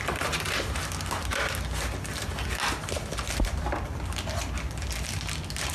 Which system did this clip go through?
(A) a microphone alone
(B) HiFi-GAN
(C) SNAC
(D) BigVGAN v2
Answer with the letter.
A